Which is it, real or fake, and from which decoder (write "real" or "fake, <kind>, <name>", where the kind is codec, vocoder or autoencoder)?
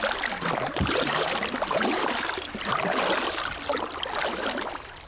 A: real